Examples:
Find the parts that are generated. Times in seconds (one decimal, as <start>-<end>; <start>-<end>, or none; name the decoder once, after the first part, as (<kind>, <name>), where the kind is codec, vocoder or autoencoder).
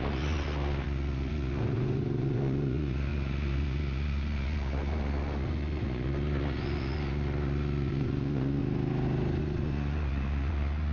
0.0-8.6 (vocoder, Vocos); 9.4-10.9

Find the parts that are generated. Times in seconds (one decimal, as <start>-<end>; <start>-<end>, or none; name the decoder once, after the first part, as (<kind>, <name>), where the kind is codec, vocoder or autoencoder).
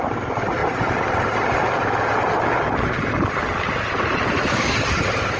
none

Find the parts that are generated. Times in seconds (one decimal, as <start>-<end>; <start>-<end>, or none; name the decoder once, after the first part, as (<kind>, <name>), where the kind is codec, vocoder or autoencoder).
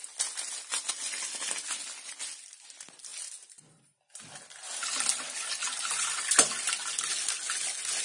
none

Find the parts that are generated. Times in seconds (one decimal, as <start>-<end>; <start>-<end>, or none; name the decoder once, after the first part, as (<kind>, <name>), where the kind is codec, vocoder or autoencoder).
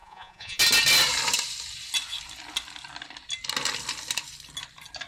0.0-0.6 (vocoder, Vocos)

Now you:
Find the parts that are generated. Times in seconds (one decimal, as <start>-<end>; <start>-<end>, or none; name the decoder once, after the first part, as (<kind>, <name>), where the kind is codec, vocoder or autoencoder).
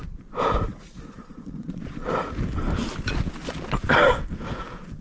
0.7-2.1 (vocoder, Vocos)